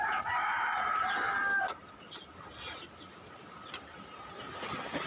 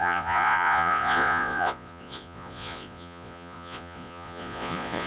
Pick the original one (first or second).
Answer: first